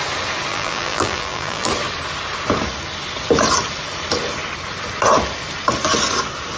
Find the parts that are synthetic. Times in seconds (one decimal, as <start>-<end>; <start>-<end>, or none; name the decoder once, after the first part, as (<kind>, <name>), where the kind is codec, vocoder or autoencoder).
0.5-1.7 (vocoder, BigVGAN v2)